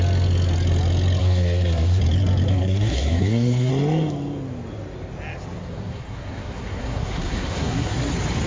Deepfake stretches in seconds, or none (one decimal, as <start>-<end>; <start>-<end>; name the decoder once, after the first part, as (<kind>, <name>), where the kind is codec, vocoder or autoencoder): 1.2-2.0 (codec, SNAC); 2.5-3.7; 5.7-8.0